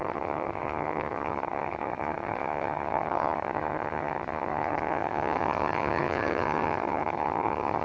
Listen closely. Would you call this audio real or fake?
fake